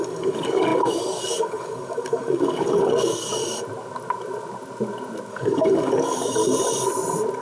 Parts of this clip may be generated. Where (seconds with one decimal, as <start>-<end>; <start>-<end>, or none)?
0.0-3.4; 5.3-6.4